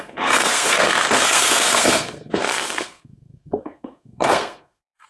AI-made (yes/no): yes